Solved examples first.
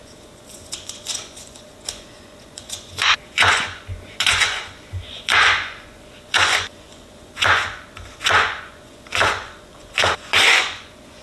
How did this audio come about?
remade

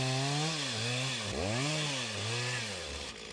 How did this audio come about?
recorded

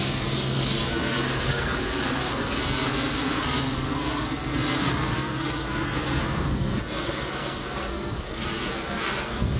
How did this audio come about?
remade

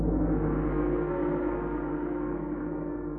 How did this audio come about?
remade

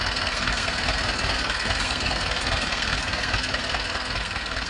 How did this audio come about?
remade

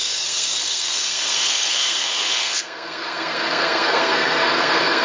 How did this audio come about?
remade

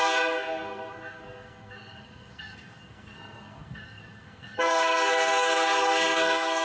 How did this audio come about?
remade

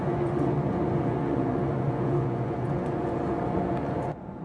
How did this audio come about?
remade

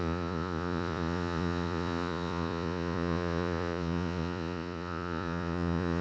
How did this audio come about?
remade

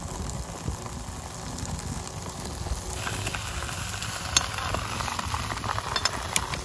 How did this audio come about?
recorded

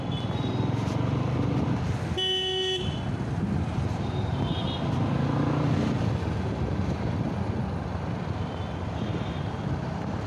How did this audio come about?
recorded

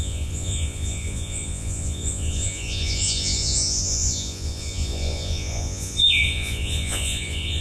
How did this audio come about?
remade